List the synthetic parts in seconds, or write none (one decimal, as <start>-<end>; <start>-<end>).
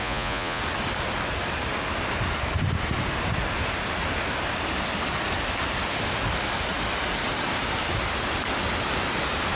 0.0-0.6